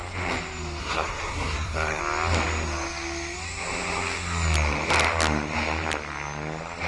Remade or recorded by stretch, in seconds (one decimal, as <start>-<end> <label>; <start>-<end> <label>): 0.0-0.8 recorded; 0.8-2.0 remade; 2.0-6.9 recorded